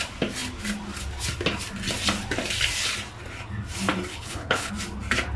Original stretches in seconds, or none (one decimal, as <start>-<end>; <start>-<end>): 0.0-4.1; 4.7-5.4